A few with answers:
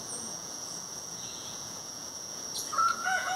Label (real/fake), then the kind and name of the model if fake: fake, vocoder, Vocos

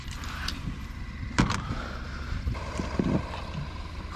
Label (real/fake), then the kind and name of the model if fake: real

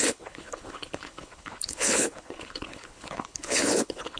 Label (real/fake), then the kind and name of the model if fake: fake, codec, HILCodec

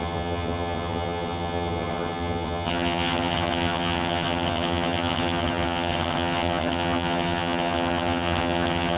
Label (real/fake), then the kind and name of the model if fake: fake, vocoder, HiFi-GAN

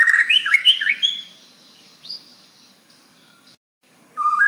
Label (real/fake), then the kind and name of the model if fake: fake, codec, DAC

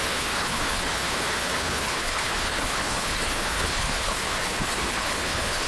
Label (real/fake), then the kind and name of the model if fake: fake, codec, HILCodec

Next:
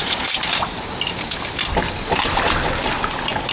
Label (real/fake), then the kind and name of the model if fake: real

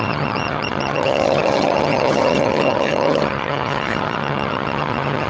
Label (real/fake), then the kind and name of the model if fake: fake, vocoder, HiFi-GAN